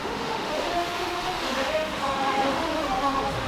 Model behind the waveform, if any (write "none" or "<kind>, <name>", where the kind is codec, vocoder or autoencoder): autoencoder, DAC-VAE